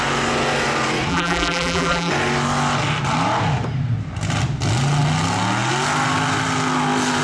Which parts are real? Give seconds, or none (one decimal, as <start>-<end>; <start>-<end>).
0.0-1.1; 2.1-7.2